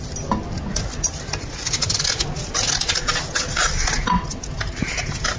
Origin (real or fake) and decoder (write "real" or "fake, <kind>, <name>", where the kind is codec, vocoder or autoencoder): real